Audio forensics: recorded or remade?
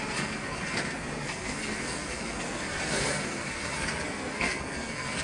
remade